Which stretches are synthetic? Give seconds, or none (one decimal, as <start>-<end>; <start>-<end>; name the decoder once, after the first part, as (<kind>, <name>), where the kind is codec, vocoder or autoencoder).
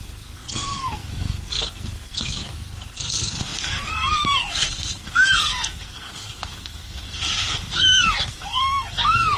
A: 0.0-9.4 (codec, SNAC)